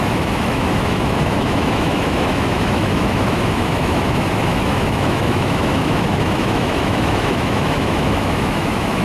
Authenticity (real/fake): fake